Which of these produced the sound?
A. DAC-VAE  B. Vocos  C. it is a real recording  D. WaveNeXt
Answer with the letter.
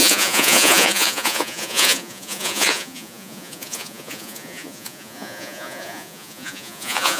B